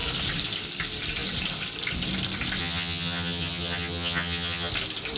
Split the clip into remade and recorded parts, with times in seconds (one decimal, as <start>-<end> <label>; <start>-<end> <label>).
0.0-2.6 recorded; 2.6-4.7 remade; 4.7-5.2 recorded